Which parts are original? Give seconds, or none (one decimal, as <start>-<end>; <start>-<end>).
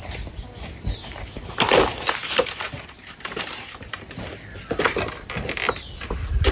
0.0-6.5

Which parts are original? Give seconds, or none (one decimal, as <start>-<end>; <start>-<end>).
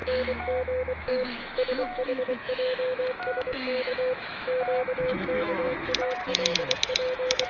none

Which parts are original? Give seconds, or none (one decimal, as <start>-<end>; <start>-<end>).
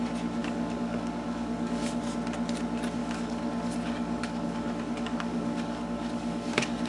0.0-0.4; 2.0-3.0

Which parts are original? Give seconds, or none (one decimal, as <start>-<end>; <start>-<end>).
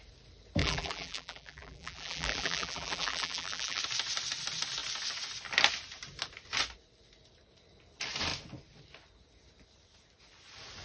0.0-0.6; 3.8-10.8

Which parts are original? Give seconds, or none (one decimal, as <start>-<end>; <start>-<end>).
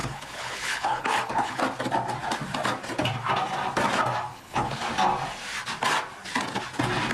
1.6-4.3; 4.8-7.1